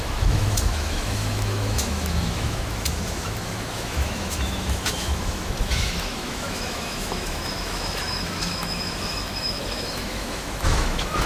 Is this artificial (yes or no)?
yes